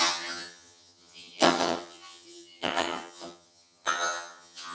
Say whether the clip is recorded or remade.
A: remade